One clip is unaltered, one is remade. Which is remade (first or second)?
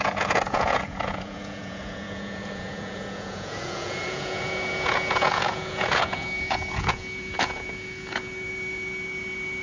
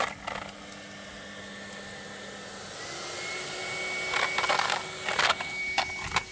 first